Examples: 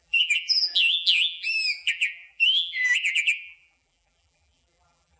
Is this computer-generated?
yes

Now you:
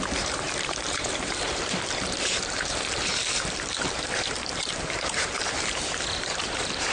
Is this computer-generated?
yes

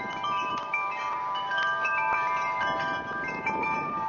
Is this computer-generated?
yes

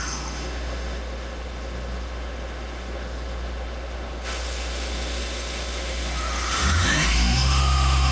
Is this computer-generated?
yes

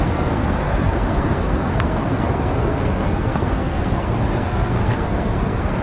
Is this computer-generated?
yes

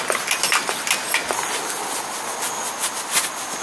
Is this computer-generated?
no